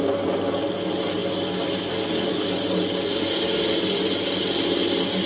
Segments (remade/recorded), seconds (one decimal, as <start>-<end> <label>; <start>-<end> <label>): 0.0-5.3 recorded